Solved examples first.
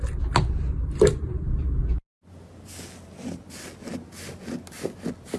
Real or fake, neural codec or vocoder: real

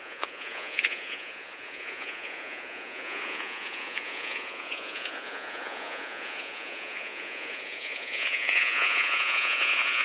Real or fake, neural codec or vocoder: fake, vocoder, Vocos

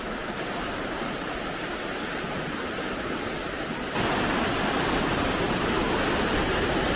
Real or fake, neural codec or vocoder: real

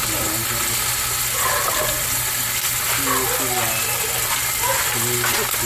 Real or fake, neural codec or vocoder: real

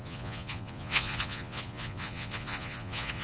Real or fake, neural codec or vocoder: fake, vocoder, Vocos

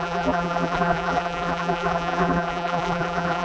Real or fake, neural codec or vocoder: fake, vocoder, BigVGAN v2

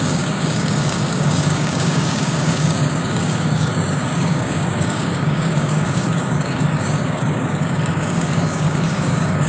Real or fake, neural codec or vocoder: fake, codec, DAC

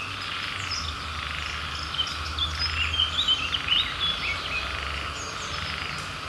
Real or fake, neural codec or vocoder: real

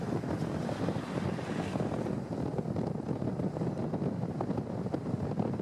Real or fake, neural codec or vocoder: real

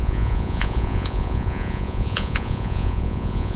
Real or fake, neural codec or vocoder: fake, vocoder, Vocos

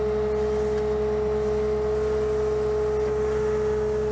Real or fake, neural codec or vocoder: real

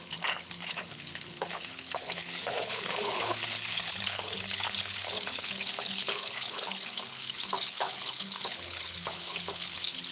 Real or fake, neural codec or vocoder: fake, codec, HILCodec